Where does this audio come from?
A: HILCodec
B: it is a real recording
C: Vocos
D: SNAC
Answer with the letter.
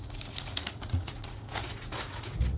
C